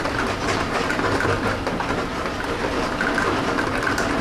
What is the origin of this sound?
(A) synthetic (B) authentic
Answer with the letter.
B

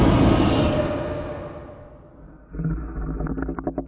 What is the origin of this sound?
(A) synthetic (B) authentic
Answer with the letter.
B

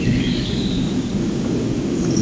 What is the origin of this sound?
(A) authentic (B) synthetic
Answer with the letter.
B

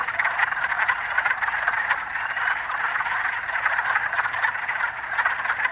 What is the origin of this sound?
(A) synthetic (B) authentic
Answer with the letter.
B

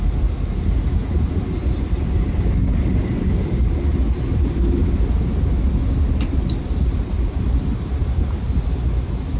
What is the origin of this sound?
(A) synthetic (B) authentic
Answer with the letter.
B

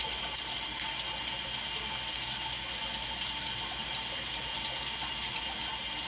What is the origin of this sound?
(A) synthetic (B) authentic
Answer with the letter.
B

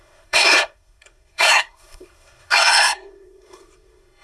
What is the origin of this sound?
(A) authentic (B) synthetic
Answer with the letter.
B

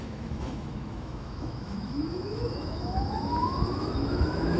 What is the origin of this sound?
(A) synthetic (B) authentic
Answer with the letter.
A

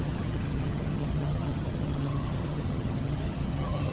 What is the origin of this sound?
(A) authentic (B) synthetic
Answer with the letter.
B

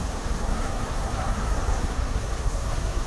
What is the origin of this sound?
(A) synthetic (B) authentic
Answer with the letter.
A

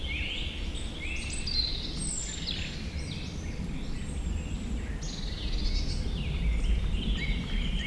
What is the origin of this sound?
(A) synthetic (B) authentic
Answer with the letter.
B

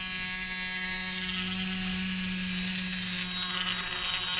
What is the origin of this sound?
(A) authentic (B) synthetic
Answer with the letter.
A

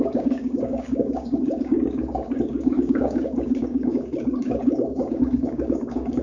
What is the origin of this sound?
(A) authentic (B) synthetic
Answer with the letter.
B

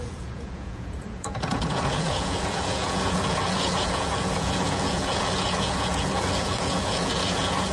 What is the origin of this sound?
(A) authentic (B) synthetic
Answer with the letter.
B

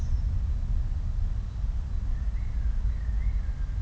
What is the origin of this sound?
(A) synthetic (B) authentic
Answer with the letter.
B